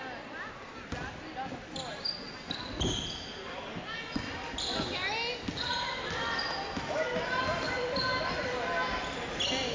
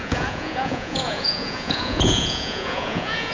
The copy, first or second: second